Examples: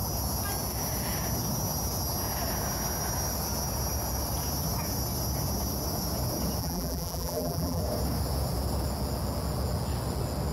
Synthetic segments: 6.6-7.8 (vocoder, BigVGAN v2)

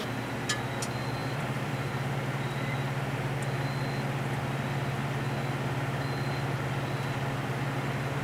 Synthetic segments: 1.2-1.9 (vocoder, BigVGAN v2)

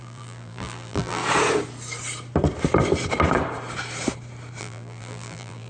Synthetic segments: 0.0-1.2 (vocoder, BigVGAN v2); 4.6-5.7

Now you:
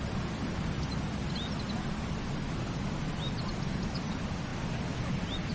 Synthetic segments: none